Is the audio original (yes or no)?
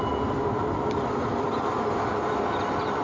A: yes